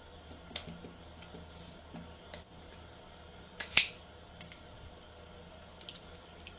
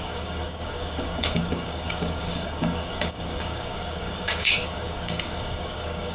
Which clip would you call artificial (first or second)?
second